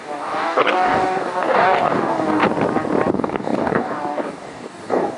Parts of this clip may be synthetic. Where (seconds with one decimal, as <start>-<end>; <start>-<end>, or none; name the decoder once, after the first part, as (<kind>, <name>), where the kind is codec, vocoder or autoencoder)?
0.0-2.4 (codec, DAC); 3.1-5.2